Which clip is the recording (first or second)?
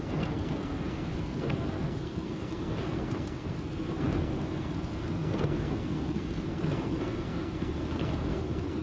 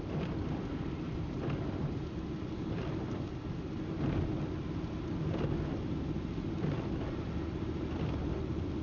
second